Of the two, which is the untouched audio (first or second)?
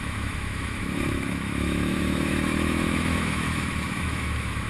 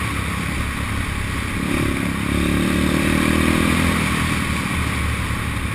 second